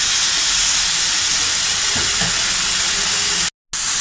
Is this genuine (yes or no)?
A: yes